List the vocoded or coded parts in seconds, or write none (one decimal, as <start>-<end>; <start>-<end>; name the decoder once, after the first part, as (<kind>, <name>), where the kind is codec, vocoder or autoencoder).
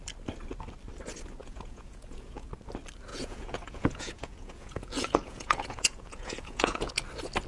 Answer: 1.4-2.5 (vocoder, Vocos); 3.1-6.9